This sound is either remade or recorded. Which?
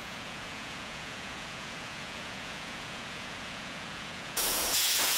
remade